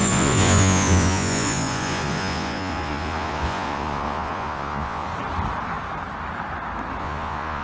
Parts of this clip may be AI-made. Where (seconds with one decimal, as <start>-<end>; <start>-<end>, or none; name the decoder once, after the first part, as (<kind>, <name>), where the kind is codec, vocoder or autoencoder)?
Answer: 0.0-5.1 (vocoder, Vocos); 7.0-7.6